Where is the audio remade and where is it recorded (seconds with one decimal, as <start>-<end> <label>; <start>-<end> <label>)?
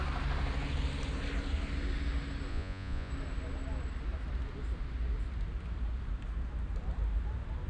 0.0-2.5 recorded; 2.5-3.1 remade; 3.1-7.7 recorded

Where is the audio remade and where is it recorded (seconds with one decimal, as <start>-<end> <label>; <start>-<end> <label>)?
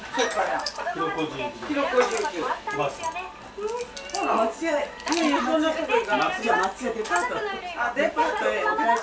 0.0-9.0 recorded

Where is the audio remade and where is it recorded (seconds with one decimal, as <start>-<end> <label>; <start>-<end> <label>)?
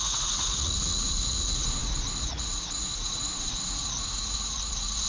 0.0-5.1 remade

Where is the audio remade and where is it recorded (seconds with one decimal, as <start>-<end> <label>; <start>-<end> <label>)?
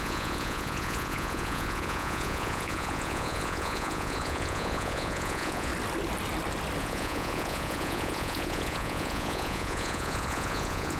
0.0-5.7 remade; 5.7-6.8 recorded; 6.8-11.0 remade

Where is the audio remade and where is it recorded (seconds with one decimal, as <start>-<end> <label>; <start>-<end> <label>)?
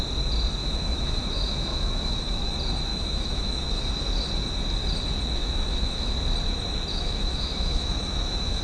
0.0-0.6 recorded; 0.6-2.5 remade; 2.5-2.9 recorded; 2.9-3.9 remade; 3.9-5.4 recorded; 5.4-6.1 remade; 6.1-6.9 recorded; 6.9-8.6 remade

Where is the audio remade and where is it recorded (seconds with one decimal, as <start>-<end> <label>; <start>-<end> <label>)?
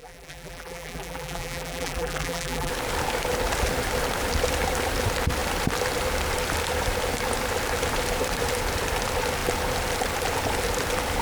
0.0-2.7 remade; 2.7-11.2 recorded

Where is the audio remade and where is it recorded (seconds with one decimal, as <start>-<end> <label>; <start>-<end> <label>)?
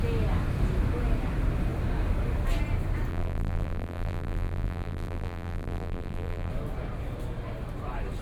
0.0-3.1 recorded; 3.1-6.5 remade; 6.5-8.2 recorded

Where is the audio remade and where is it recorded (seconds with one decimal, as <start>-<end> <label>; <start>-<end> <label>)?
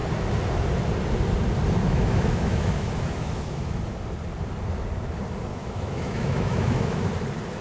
0.0-1.8 recorded; 1.8-3.8 remade; 3.8-5.5 recorded; 5.5-7.1 remade; 7.1-7.6 recorded